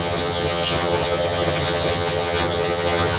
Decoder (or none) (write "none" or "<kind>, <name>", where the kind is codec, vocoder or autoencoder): vocoder, HiFi-GAN